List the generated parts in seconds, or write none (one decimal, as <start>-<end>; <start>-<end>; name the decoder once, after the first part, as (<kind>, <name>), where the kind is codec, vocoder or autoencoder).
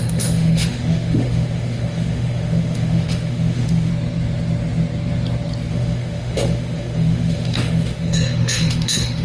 0.0-3.9 (autoencoder, DAC-VAE); 5.7-9.2